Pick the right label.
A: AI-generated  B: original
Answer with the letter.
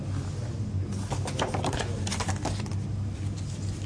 B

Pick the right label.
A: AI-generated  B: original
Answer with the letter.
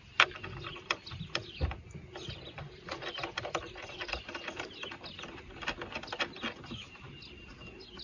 B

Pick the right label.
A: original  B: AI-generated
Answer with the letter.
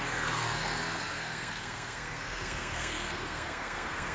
B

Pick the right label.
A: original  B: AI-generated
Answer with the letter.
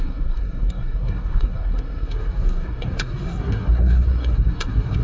B